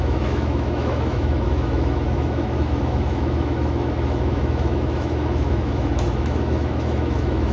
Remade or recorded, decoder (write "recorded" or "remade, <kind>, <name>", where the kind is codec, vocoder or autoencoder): remade, autoencoder, DAC-VAE